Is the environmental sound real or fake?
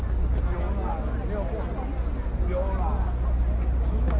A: real